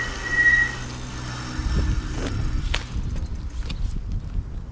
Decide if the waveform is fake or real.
real